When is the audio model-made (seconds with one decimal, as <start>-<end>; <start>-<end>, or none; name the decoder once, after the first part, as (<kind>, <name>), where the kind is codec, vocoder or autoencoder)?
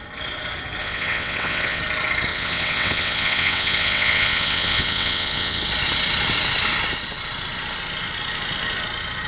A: 0.8-1.8 (vocoder, WaveNeXt); 2.3-5.6